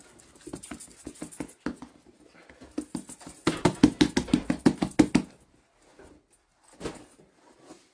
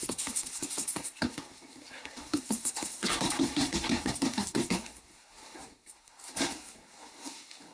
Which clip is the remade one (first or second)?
second